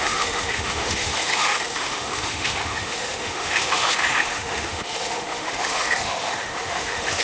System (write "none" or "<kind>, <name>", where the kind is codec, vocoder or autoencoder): autoencoder, DAC-VAE